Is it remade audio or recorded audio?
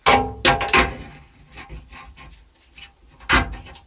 recorded